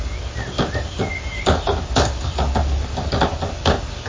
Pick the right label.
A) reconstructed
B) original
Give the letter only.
B